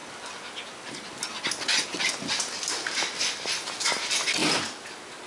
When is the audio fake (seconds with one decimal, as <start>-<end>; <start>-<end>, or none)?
none